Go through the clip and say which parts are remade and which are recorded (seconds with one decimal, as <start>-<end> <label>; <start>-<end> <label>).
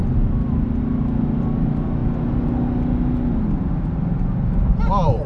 0.0-5.3 recorded